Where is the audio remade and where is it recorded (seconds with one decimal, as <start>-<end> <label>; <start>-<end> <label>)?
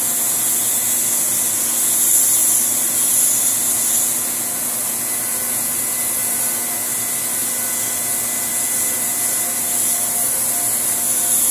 0.0-11.5 recorded